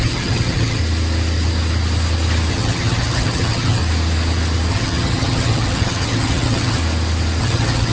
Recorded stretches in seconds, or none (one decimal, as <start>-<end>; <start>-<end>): 0.8-2.5; 3.8-4.7; 6.8-7.4